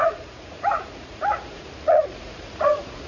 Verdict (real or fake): fake